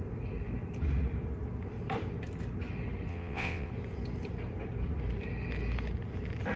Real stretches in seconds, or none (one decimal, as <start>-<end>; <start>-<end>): 0.0-3.1; 3.7-6.6